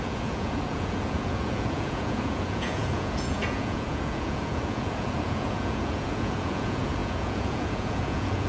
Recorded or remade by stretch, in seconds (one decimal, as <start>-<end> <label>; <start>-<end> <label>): 0.0-8.5 remade